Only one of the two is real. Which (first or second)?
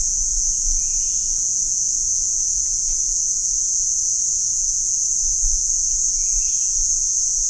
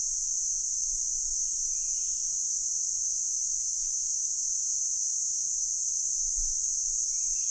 second